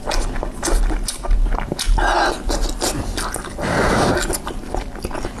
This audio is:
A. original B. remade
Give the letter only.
A